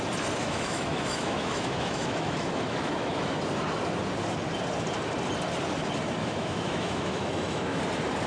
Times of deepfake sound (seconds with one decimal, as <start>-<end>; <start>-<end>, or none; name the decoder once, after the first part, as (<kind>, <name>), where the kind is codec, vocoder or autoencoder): 0.4-3.4 (autoencoder, DAC-VAE); 6.2-7.8